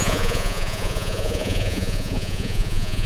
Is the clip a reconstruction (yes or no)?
yes